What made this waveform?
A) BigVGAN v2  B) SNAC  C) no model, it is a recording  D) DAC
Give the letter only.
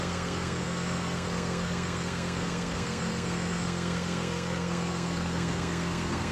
B